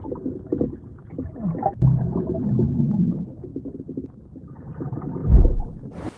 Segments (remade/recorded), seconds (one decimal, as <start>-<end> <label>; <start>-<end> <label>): 0.0-6.2 recorded